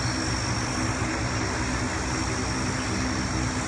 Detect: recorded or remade recorded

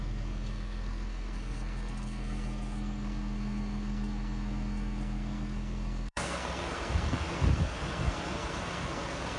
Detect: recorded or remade remade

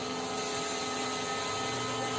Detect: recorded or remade recorded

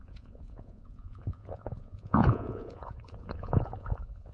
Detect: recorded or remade remade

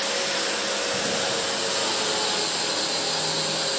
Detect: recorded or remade recorded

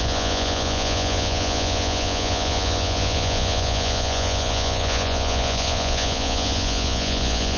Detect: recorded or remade remade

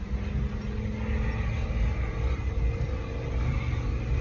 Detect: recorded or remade recorded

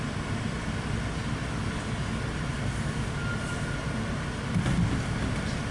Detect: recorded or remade recorded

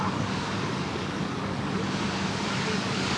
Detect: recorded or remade remade